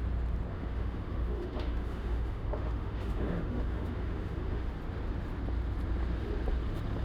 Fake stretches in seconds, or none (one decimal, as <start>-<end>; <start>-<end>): 0.5-4.7